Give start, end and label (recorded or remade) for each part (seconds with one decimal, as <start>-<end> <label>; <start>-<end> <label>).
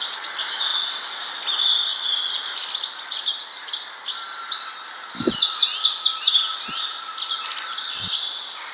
0.0-8.7 recorded